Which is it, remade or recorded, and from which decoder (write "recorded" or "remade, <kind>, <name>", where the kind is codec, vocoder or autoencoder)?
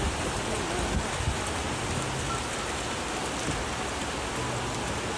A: recorded